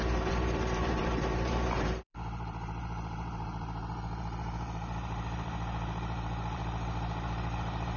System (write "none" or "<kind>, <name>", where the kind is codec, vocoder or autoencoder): vocoder, BigVGAN v2